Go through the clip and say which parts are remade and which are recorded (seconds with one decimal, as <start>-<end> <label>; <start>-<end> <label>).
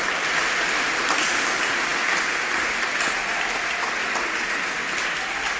0.0-5.6 recorded